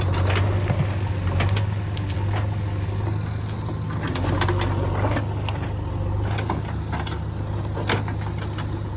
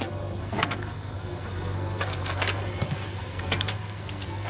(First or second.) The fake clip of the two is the second